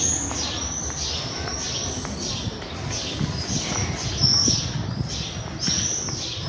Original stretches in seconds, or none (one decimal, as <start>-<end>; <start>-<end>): 0.0-6.5